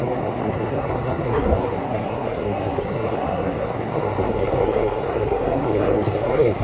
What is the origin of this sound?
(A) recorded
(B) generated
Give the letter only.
B